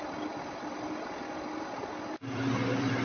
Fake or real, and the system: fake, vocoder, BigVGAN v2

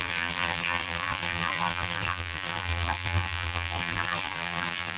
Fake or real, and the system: fake, vocoder, BigVGAN v2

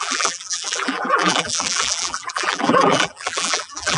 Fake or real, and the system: fake, vocoder, BigVGAN v2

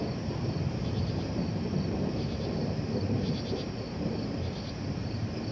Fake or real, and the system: fake, vocoder, BigVGAN v2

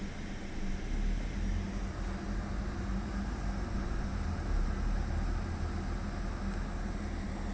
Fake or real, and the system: real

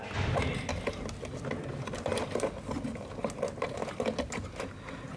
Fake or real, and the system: real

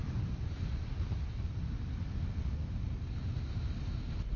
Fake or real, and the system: real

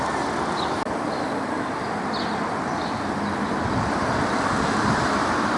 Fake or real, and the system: real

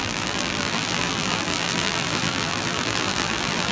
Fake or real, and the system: fake, vocoder, BigVGAN v2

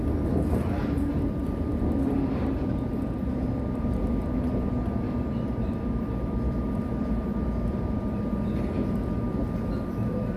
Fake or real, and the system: fake, vocoder, BigVGAN v2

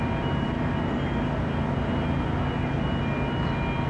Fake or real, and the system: real